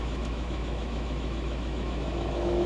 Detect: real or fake fake